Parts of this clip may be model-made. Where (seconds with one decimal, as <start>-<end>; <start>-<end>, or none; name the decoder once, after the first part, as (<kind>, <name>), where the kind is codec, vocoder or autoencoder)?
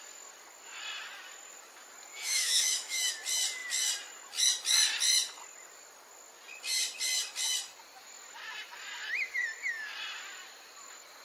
2.1-3.1 (autoencoder, DAC-VAE)